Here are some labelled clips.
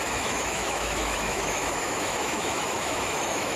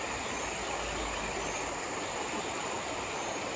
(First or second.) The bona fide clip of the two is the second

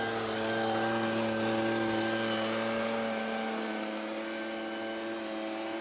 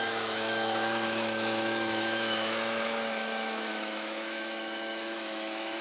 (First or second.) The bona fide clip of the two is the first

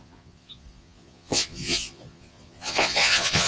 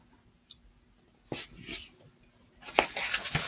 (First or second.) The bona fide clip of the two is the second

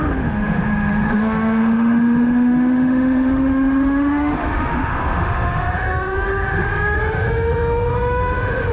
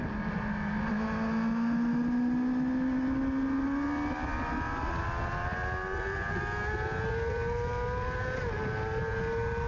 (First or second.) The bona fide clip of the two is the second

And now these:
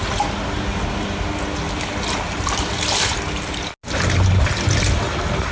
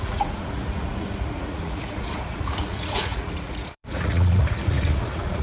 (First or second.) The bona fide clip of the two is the first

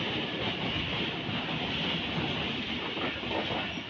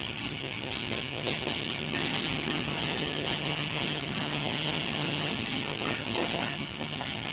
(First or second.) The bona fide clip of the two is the first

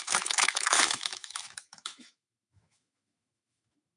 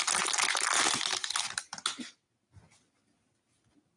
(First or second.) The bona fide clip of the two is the second